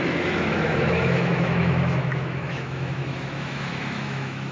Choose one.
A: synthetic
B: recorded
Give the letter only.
A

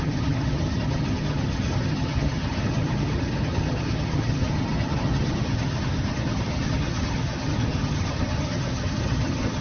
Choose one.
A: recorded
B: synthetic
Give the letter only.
B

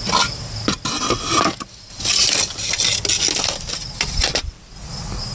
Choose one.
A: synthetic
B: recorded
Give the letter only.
B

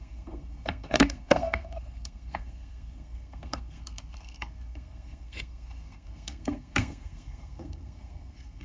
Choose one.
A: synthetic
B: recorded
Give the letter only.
A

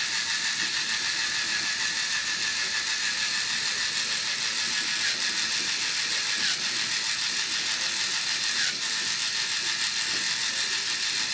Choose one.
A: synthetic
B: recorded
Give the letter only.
B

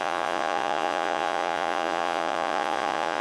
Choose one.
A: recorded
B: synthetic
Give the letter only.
B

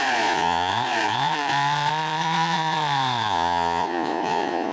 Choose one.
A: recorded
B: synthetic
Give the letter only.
B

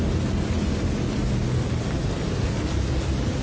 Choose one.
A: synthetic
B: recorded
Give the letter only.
B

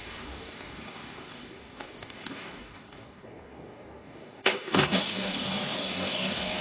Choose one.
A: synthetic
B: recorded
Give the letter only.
A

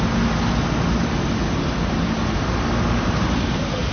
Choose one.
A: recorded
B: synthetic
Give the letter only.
A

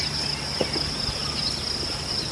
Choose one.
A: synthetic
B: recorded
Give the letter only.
B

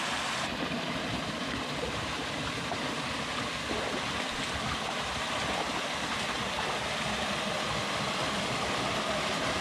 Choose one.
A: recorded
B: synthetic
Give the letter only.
A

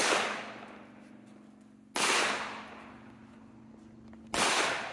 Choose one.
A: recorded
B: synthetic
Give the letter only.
A